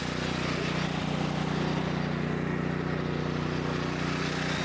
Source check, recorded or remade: recorded